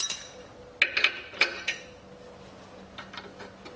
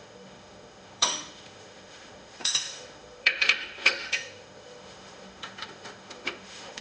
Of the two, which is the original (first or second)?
first